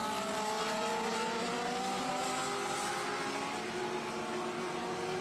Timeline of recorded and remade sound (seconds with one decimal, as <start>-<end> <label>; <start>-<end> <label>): 0.0-5.2 recorded